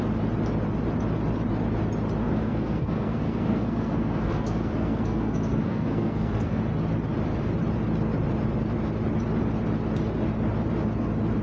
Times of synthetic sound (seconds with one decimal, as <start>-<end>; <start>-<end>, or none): 2.2-6.6